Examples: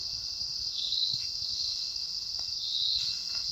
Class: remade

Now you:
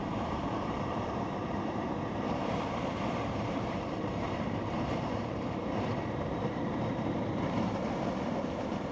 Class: remade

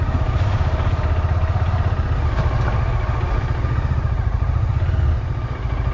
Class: recorded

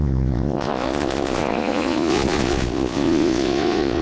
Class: remade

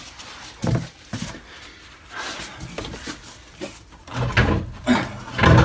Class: recorded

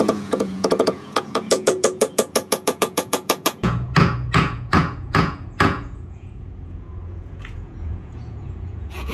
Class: remade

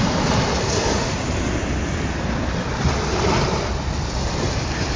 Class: recorded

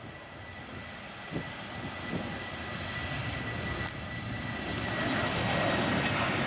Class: recorded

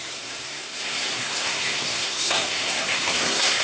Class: remade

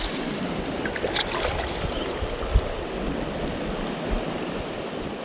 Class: recorded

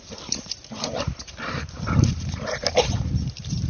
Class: remade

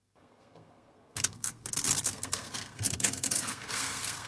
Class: remade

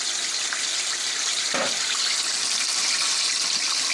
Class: recorded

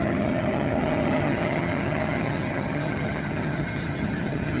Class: remade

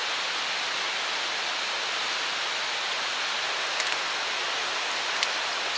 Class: recorded